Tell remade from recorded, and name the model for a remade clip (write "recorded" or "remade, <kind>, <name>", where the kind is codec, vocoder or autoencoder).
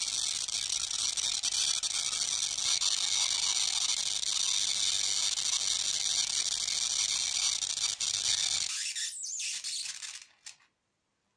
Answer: recorded